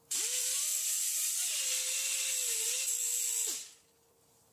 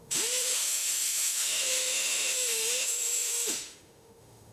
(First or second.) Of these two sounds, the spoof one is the second